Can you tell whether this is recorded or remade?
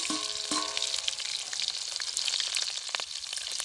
recorded